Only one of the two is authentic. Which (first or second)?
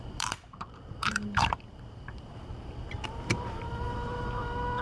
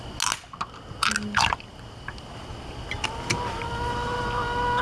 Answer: second